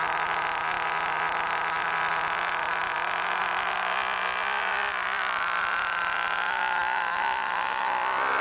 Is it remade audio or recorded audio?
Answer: recorded